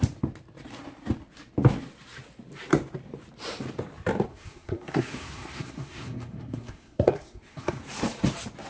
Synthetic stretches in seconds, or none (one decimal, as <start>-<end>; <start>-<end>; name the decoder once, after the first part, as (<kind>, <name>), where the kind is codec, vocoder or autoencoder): 4.3-7.8 (codec, SNAC)